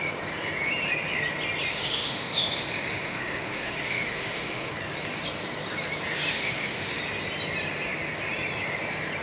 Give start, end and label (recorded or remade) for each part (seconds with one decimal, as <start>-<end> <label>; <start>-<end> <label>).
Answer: 0.0-1.7 recorded; 1.7-4.7 remade; 4.7-6.3 recorded; 6.3-7.0 remade; 7.0-9.2 recorded

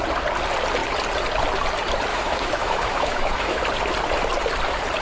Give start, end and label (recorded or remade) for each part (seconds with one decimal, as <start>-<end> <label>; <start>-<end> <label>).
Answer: 0.0-2.1 recorded; 2.1-3.6 remade; 3.6-5.0 recorded

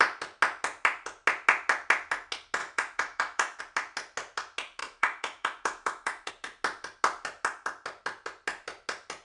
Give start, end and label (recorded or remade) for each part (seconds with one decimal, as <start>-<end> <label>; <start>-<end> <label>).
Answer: 0.0-2.6 recorded; 2.6-3.6 remade; 3.6-4.8 recorded; 4.8-6.3 remade; 6.3-9.2 recorded

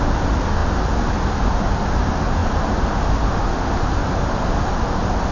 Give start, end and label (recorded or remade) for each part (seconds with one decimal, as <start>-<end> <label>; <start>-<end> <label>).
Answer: 0.0-5.3 recorded

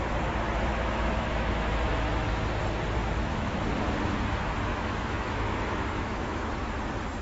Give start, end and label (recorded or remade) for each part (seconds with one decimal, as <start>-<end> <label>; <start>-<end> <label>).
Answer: 0.0-0.7 recorded; 0.7-1.9 remade; 1.9-3.0 recorded; 3.0-3.6 remade; 3.6-4.7 recorded; 4.7-6.5 remade; 6.5-7.2 recorded

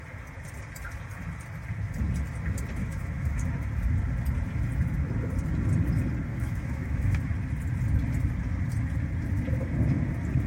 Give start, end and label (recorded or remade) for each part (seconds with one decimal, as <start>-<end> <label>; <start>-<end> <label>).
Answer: 0.0-2.8 recorded; 2.8-3.5 remade; 3.5-6.3 recorded; 6.3-7.2 remade; 7.2-10.5 recorded

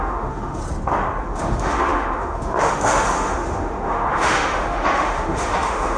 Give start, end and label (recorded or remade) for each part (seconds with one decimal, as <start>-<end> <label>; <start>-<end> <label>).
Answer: 0.0-0.6 remade; 0.6-1.2 recorded; 1.2-6.0 remade

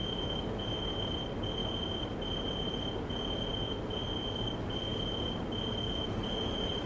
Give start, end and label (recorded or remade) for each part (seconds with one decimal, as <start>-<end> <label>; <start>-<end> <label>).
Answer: 0.0-1.1 remade; 1.1-6.9 recorded